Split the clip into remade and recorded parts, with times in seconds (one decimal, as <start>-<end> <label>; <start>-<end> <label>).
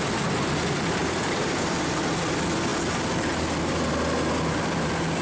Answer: 0.0-1.0 recorded; 1.0-2.0 remade; 2.0-5.2 recorded